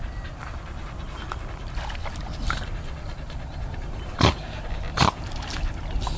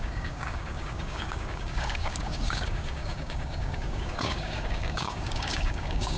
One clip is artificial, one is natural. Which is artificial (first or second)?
second